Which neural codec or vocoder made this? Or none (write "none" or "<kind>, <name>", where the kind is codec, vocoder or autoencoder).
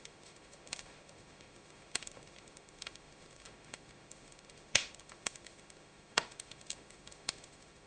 autoencoder, DAC-VAE